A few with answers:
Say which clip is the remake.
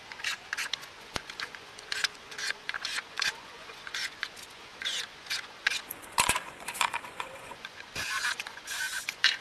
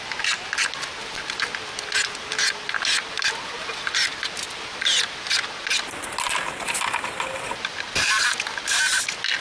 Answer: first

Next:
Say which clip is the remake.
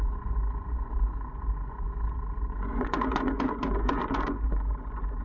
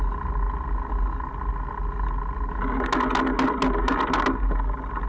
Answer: first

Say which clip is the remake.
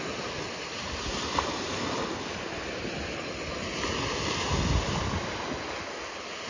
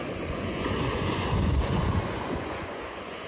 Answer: second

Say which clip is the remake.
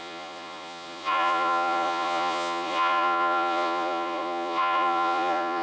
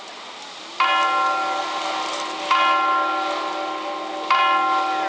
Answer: first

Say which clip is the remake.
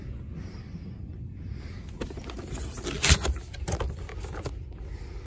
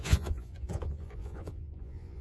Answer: second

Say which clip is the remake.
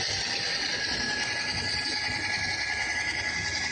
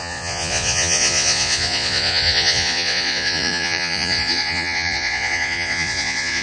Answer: second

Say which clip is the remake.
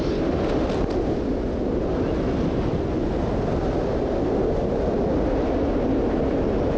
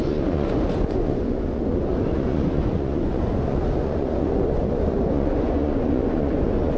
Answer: second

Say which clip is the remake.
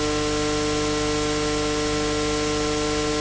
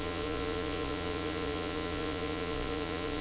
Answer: second